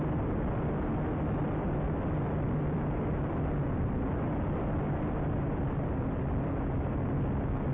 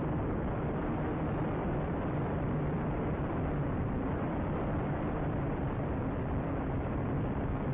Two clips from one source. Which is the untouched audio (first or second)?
first